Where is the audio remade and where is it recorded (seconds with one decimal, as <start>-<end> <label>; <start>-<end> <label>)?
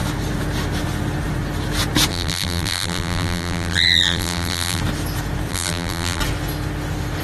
0.0-2.1 recorded; 2.1-4.8 remade; 4.8-5.5 recorded; 5.5-6.2 remade; 6.2-7.2 recorded